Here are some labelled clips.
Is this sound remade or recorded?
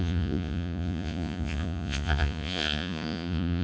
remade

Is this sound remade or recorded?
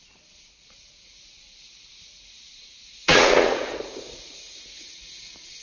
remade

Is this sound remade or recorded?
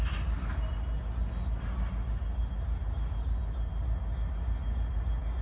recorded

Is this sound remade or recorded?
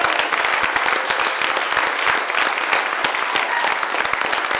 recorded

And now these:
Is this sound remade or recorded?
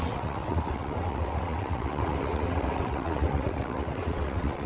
remade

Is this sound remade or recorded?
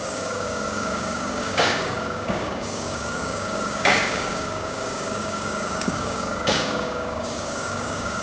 remade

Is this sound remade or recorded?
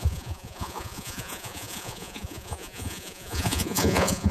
remade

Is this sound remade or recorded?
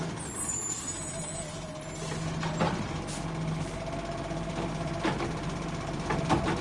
recorded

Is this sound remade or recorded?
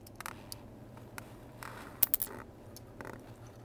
recorded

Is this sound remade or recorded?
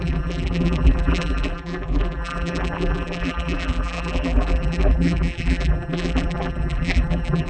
remade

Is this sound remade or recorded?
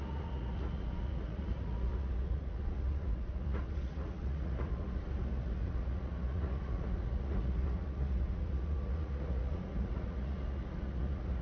remade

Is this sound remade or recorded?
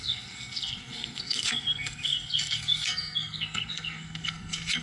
remade